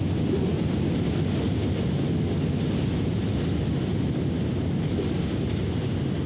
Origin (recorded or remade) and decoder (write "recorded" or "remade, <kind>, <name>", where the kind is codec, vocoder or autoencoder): recorded